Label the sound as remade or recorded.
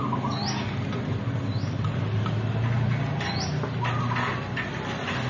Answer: recorded